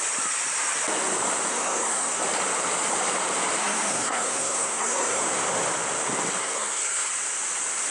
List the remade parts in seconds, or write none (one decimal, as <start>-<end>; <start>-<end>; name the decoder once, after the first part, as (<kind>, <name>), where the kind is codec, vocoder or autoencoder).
1.5-2.2 (codec, SNAC); 3.6-5.2; 6.4-7.1